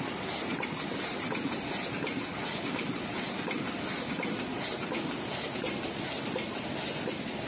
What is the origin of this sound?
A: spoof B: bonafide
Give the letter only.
B